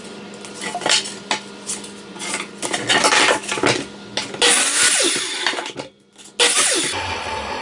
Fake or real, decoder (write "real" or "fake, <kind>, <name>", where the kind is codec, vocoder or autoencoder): real